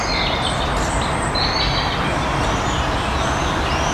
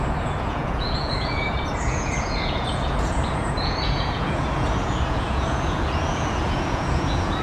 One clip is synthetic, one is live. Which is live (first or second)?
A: first